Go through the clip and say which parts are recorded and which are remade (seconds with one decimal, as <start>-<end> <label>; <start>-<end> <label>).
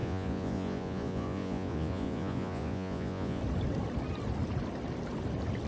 0.0-3.4 remade; 3.4-5.7 recorded